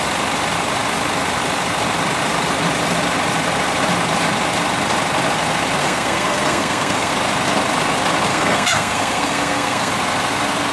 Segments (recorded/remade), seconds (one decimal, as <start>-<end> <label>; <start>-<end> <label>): 0.0-5.8 recorded; 5.8-7.1 remade; 7.1-8.3 recorded; 8.3-9.9 remade; 9.9-10.7 recorded

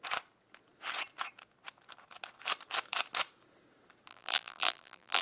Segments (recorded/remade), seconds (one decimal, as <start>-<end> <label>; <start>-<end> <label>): 0.0-4.1 recorded; 4.1-5.2 remade

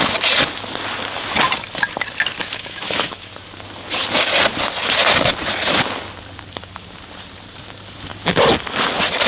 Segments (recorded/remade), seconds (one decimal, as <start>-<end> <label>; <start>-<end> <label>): 0.0-2.4 recorded; 2.4-3.3 remade; 3.3-9.3 recorded

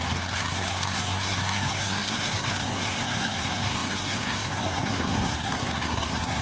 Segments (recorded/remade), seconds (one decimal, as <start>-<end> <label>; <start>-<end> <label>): 0.0-6.4 remade

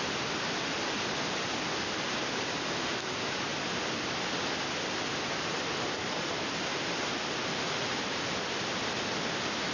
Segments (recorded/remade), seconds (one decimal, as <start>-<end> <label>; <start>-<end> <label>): 0.0-9.7 recorded

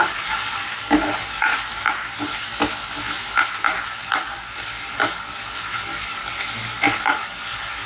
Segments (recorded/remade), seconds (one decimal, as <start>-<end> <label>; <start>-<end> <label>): 0.0-1.5 remade; 1.5-3.9 recorded; 3.9-6.2 remade; 6.2-7.0 recorded; 7.0-7.9 remade

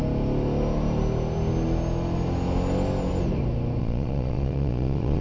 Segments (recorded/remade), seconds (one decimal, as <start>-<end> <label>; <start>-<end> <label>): 0.0-3.8 recorded; 3.8-5.2 remade

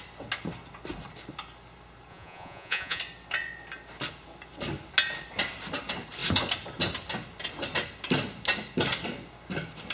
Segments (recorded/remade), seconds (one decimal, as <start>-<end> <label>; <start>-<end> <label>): 0.0-2.1 recorded; 2.1-3.0 remade; 3.0-9.9 recorded